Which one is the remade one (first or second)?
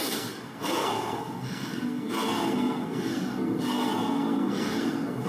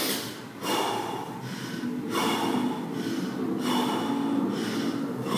first